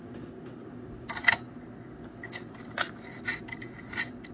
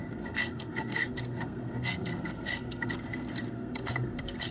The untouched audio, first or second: first